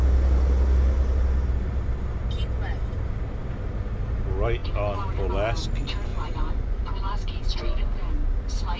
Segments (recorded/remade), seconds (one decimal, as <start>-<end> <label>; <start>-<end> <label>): 0.0-6.1 recorded; 6.1-8.1 remade; 8.1-8.8 recorded